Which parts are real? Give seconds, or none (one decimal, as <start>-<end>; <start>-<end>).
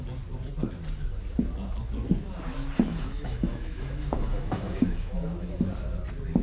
0.0-2.9; 5.6-6.4